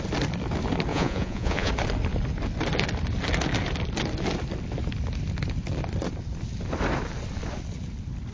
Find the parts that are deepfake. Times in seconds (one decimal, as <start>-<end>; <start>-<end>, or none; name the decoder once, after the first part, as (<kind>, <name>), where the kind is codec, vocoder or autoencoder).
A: 0.9-1.7 (vocoder, Vocos)